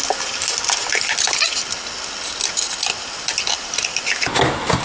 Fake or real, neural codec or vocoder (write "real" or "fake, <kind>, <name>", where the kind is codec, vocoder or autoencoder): real